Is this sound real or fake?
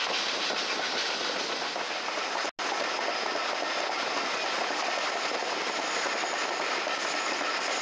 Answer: real